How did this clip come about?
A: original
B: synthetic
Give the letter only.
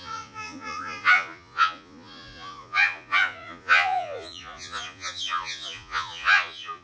B